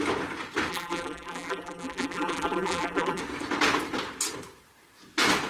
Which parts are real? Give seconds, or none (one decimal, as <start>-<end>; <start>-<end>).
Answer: 0.0-0.7; 3.2-5.5